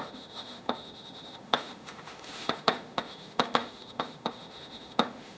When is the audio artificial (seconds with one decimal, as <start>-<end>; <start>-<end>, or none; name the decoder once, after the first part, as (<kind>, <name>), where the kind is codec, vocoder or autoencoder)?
0.0-5.4 (autoencoder, DAC-VAE)